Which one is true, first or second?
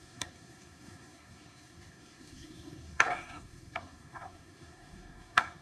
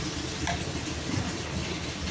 second